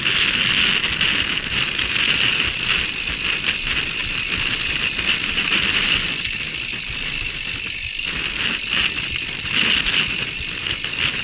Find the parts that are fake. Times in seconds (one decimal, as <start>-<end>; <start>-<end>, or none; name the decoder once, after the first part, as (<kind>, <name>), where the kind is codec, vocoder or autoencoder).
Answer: none